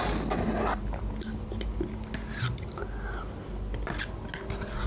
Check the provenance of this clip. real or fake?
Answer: real